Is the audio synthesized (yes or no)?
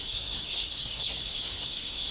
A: yes